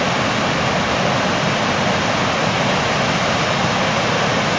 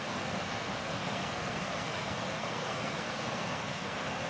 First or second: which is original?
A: first